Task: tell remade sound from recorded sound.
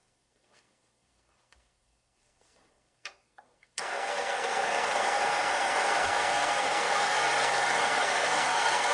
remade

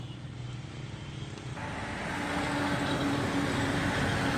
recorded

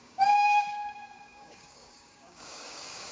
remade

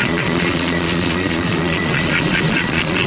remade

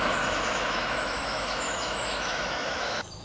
remade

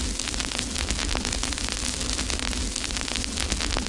recorded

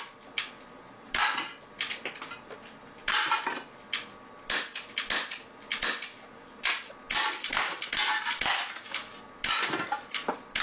recorded